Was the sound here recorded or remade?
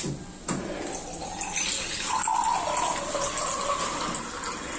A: recorded